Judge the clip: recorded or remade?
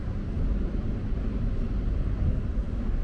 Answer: recorded